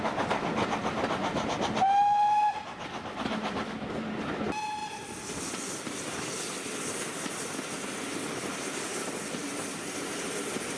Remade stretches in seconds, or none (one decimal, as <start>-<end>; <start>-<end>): 9.4-10.2